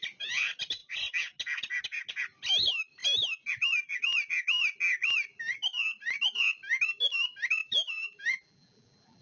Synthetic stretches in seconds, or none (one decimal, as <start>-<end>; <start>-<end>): 7.6-9.2